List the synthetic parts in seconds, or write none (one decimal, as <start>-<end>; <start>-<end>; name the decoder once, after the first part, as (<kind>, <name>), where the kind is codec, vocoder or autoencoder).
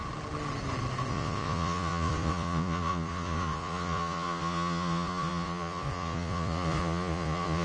1.1-7.6 (vocoder, Vocos)